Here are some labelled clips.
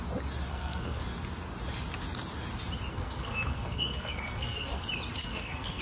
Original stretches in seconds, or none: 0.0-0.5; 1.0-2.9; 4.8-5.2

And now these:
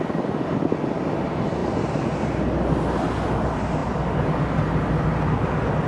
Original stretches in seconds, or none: 0.0-5.9

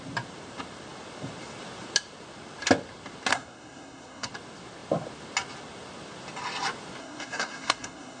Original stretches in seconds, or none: 0.0-3.3; 4.3-7.0

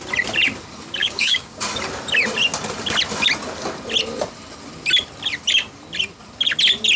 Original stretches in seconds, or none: 0.0-1.0; 1.6-7.0

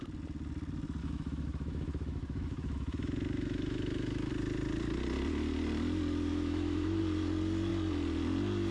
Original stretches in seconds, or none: 0.0-1.0; 4.3-6.3; 7.0-8.7